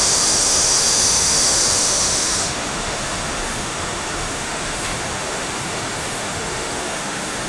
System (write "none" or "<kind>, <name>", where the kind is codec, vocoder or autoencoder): autoencoder, DAC-VAE